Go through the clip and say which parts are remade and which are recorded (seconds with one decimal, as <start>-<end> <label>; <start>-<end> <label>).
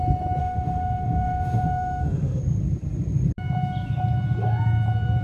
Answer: 0.0-0.4 recorded; 0.4-2.4 remade; 2.4-5.2 recorded